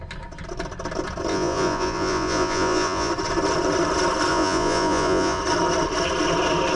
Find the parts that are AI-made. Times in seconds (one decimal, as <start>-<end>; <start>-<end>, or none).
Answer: 1.3-3.1; 4.3-5.4